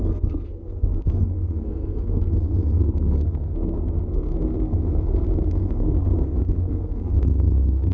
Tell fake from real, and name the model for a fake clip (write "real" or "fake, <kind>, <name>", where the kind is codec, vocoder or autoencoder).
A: fake, codec, SNAC